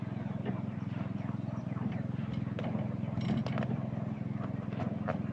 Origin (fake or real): real